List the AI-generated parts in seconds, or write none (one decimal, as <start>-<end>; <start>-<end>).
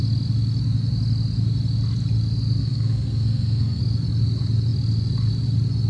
2.6-3.8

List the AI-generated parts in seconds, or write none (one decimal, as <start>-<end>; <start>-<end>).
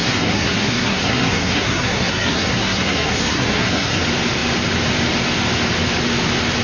0.0-4.0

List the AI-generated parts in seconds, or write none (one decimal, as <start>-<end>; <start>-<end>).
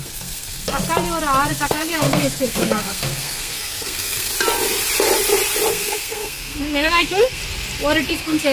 0.0-0.8; 1.5-4.3; 5.7-7.4; 8.1-8.5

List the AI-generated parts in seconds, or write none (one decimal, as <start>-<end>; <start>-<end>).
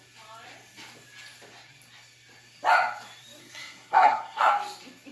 3.4-4.5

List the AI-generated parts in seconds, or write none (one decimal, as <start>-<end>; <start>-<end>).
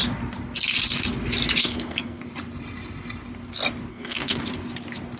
1.6-2.2; 3.9-4.4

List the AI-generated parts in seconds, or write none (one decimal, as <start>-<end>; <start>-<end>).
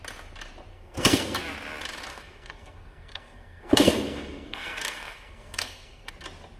0.7-1.4; 2.1-6.1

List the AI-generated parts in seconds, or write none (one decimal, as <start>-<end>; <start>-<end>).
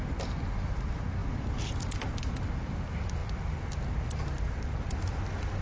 none